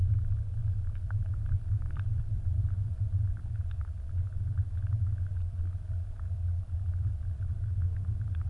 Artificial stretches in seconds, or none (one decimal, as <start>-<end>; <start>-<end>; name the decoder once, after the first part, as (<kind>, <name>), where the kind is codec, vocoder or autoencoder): 0.6-3.0 (vocoder, BigVGAN v2); 3.6-4.7; 5.3-7.5

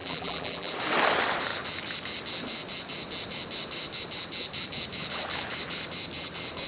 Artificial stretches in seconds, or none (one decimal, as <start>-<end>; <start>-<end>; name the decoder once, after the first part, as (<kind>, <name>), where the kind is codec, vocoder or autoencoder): 0.0-0.7 (vocoder, BigVGAN v2)

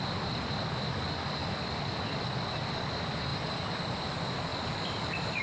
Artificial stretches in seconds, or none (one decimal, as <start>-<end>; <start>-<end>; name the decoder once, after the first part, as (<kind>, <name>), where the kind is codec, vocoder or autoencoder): 1.4-2.3 (vocoder, BigVGAN v2); 4.5-5.4

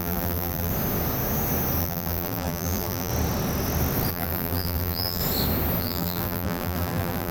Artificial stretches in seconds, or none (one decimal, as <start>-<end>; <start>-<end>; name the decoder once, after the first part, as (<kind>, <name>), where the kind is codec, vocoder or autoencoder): 0.0-0.7 (vocoder, BigVGAN v2); 1.8-3.1; 4.1-5.2; 5.8-7.3

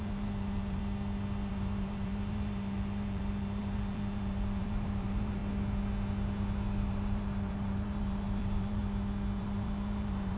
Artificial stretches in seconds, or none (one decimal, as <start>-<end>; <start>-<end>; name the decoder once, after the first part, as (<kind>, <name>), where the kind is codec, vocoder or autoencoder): 0.0-0.8 (vocoder, BigVGAN v2); 1.5-5.4; 6.9-8.8; 9.4-10.4

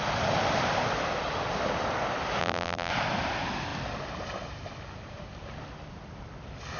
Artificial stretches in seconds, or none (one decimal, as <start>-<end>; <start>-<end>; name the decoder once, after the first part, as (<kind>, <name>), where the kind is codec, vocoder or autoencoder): 2.4-2.9 (vocoder, BigVGAN v2)

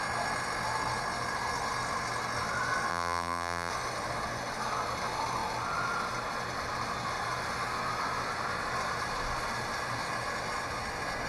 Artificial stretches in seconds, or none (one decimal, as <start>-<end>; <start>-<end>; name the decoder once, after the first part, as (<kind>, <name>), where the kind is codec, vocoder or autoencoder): 2.9-3.7 (vocoder, BigVGAN v2)

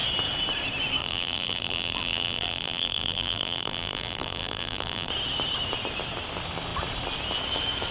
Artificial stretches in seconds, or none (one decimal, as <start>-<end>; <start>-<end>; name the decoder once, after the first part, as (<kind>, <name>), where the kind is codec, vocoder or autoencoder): 1.0-5.1 (vocoder, BigVGAN v2)